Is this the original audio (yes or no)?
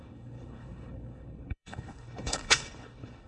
no